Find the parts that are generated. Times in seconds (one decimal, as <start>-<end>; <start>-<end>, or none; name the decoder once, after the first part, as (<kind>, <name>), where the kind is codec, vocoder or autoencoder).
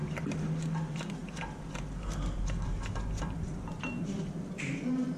none